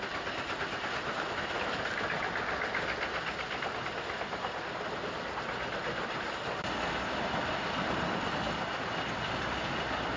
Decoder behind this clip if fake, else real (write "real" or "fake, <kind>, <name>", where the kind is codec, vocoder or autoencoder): real